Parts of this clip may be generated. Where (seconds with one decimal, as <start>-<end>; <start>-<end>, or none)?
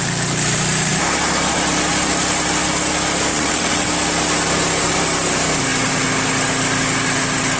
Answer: 3.3-3.9